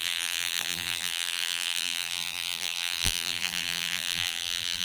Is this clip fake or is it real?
fake